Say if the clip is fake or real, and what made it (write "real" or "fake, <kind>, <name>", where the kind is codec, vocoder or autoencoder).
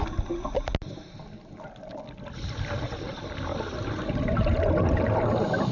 real